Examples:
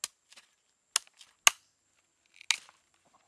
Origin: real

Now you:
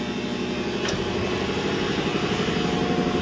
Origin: real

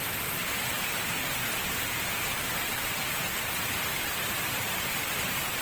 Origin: fake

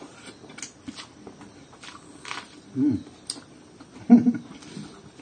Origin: real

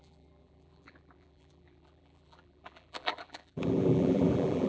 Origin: fake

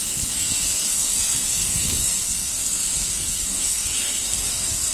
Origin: fake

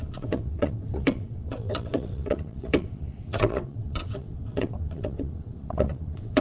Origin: fake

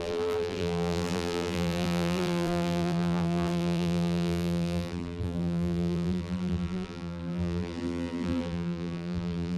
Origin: fake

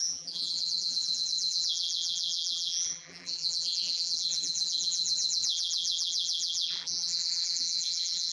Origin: fake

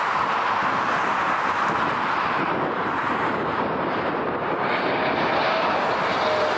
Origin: real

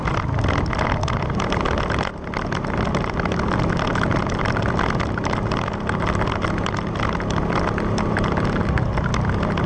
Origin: real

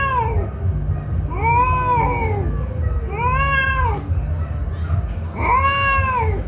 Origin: real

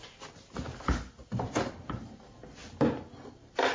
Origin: real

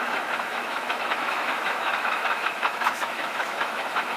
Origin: fake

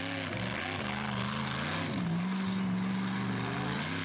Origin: real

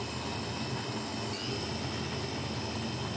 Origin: real